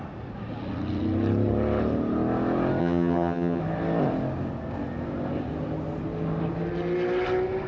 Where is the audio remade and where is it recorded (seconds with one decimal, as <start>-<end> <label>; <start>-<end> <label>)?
0.0-2.8 recorded; 2.8-3.6 remade; 3.6-7.7 recorded